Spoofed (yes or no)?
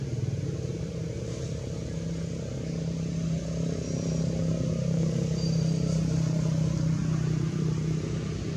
no